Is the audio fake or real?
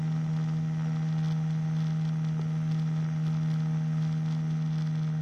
real